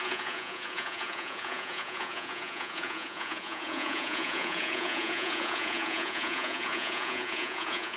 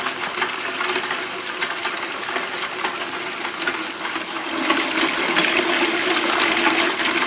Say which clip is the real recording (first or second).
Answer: second